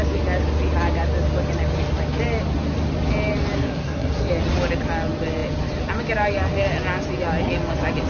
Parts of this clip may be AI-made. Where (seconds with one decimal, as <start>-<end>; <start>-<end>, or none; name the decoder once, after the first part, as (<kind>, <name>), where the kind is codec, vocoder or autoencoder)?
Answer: 3.6-4.3 (codec, SNAC)